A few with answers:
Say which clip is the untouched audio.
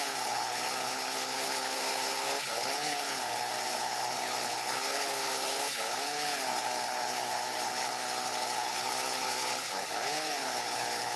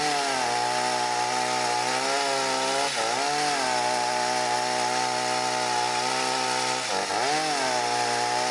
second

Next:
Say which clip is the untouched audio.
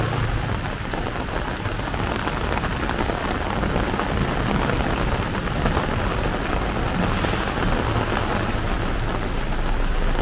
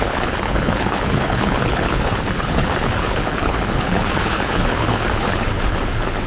first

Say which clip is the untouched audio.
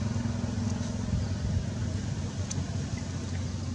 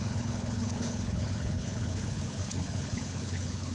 first